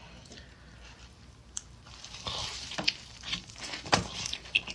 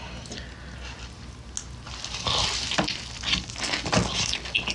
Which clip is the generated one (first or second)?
first